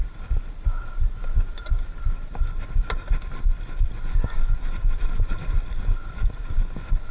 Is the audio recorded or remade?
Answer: recorded